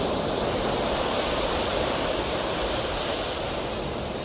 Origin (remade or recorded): recorded